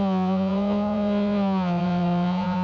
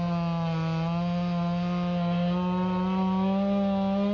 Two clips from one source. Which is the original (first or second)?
second